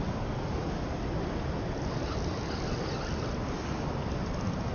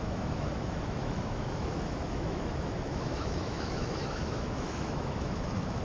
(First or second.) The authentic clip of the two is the first